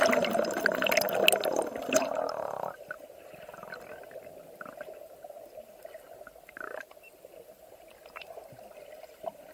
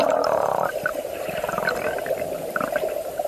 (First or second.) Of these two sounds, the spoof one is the second